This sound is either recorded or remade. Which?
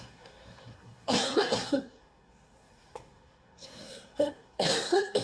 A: remade